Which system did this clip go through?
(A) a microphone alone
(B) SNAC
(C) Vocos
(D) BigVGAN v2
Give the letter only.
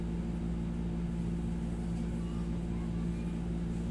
A